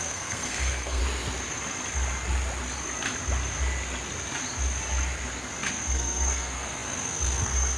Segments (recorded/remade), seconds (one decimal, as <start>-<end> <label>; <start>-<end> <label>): 0.0-1.0 remade; 1.0-5.7 recorded; 5.7-7.8 remade